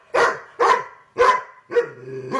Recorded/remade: recorded